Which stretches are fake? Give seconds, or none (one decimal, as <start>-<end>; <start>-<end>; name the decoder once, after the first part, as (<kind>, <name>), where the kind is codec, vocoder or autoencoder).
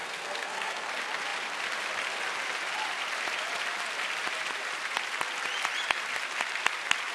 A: 0.0-0.9 (codec, SNAC)